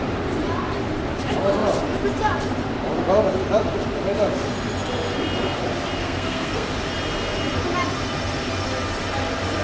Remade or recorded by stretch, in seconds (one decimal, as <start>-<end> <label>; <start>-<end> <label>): 0.0-6.0 recorded; 6.0-6.7 remade; 6.7-9.6 recorded